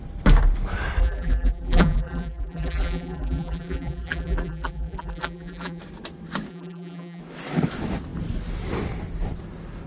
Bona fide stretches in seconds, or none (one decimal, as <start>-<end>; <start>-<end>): 0.0-1.0; 5.8-6.5; 7.2-9.9